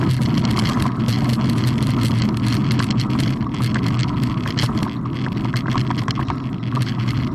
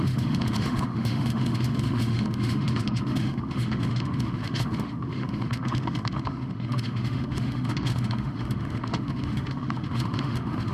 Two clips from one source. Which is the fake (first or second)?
second